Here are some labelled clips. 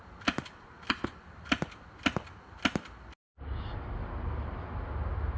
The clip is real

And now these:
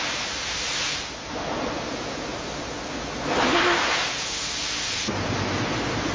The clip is real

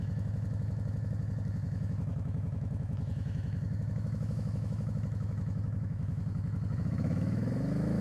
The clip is fake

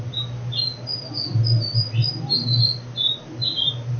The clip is real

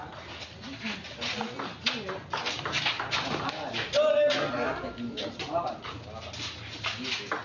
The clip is real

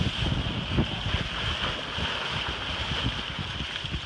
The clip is real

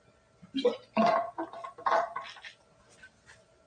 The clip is real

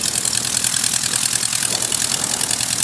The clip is real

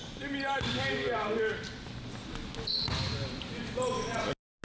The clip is real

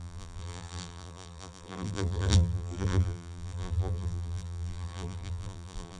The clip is fake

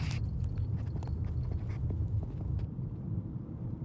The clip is real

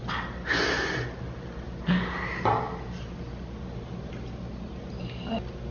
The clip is real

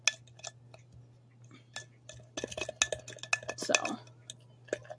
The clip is real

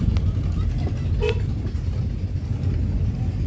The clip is real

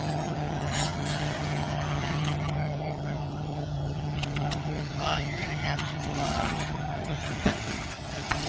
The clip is fake